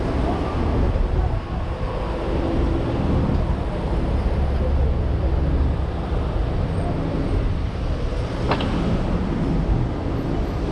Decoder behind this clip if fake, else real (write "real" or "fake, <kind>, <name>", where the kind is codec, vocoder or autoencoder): real